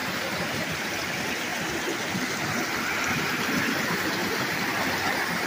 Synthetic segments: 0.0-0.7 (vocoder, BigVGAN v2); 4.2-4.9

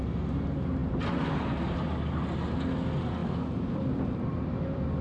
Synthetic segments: 3.2-5.0 (vocoder, BigVGAN v2)

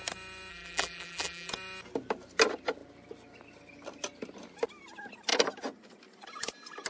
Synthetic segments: 0.5-1.5 (vocoder, BigVGAN v2)